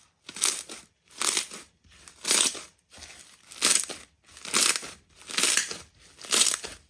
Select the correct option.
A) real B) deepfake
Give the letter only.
A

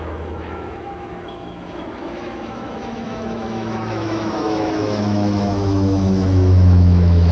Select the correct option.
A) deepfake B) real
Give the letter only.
A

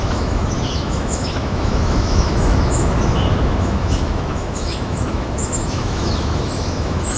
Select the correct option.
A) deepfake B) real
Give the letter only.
A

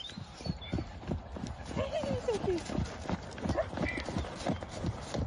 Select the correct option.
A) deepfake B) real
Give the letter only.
B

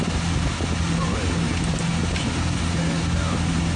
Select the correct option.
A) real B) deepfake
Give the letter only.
A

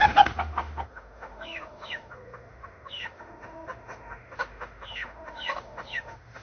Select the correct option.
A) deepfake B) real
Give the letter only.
A